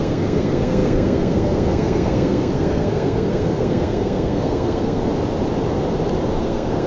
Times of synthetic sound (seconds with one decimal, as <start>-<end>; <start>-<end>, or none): 0.0-5.0; 6.4-6.9